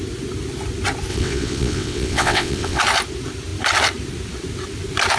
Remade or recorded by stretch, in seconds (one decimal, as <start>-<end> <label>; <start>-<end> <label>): 0.0-1.1 recorded; 1.1-2.8 remade; 2.8-5.2 recorded